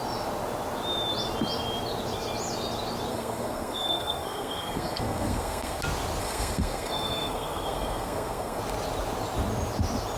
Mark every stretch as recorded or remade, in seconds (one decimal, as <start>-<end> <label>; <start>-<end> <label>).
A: 0.0-3.1 recorded; 3.1-5.8 remade; 5.8-6.2 recorded; 6.2-8.6 remade; 8.6-10.2 recorded